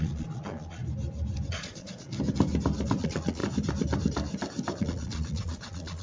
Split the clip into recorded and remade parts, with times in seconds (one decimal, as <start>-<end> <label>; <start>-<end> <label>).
0.0-0.8 remade; 0.8-1.5 recorded; 1.5-2.1 remade; 2.1-3.0 recorded; 3.0-3.4 remade; 3.4-4.8 recorded; 4.8-6.0 remade